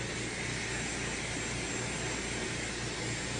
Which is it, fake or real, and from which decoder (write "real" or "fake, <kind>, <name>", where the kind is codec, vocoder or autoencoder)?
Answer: real